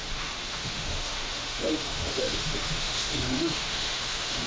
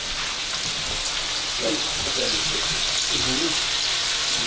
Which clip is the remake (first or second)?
first